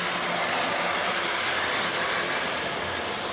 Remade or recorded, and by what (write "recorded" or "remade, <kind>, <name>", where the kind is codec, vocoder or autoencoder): recorded